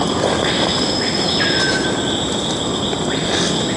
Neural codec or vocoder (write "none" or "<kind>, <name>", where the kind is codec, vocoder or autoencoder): none